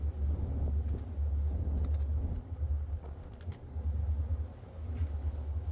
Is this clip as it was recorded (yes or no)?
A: yes